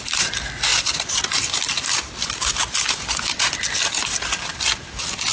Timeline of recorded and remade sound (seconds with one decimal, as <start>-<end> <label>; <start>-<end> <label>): 0.0-5.3 recorded